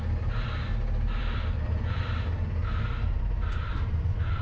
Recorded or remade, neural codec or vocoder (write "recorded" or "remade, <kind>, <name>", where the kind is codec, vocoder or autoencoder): remade, vocoder, BigVGAN v2